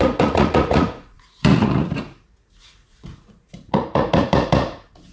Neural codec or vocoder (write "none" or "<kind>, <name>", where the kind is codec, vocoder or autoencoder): vocoder, Vocos